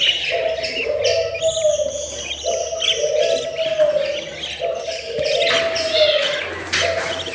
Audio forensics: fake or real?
real